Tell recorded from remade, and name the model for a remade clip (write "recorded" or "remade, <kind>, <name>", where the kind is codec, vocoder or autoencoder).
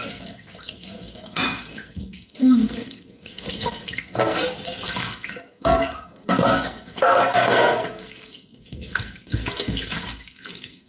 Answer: remade, codec, SNAC